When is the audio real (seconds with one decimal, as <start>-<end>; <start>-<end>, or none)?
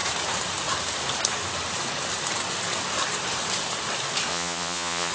0.0-4.3